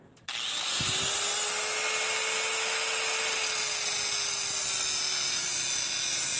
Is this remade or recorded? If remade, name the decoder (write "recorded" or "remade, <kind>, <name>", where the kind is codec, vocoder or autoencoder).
recorded